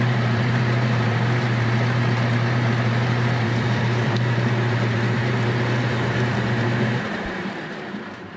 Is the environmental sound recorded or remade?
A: remade